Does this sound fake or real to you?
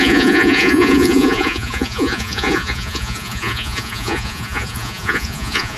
fake